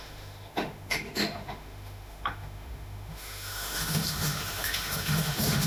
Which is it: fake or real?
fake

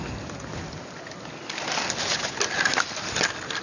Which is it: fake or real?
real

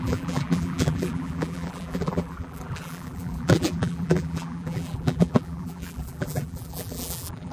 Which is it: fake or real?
fake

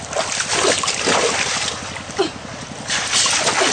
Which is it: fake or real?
real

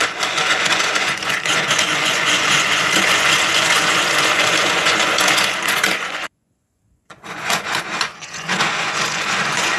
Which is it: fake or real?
fake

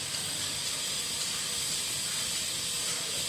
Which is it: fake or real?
real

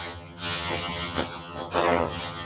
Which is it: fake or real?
fake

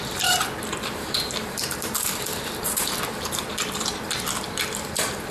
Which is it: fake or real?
fake